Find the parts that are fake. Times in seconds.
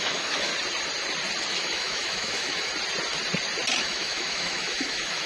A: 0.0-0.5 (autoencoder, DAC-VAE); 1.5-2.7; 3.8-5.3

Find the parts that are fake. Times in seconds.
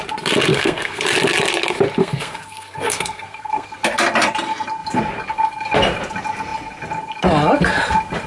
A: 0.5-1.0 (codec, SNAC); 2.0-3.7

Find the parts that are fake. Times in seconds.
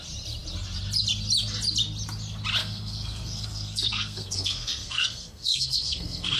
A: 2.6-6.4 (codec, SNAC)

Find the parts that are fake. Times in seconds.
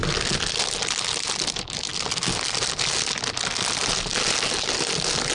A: none